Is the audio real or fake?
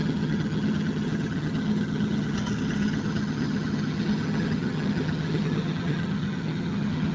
fake